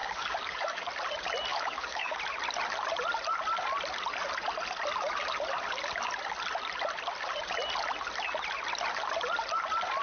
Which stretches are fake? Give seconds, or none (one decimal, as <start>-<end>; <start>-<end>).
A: 0.0-0.9; 1.5-2.2